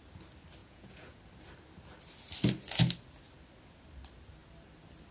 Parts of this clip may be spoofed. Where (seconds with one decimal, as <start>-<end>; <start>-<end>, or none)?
0.6-1.2